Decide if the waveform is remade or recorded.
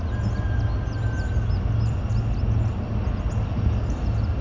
recorded